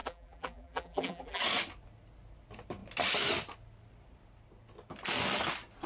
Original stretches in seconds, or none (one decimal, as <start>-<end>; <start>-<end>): 1.4-5.9

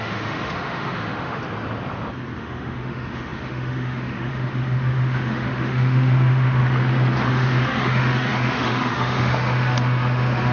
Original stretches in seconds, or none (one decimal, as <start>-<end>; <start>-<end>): 1.4-2.4; 6.6-7.3

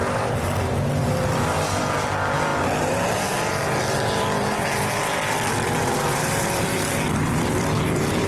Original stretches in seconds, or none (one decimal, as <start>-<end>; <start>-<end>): 0.0-1.0

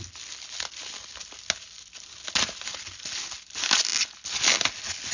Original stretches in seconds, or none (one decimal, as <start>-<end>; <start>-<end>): 0.0-5.1